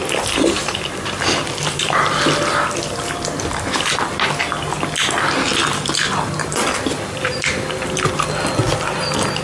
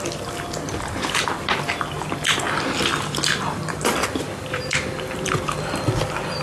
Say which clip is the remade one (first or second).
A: second